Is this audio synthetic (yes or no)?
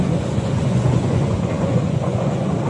yes